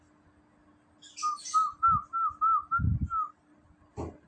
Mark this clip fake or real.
real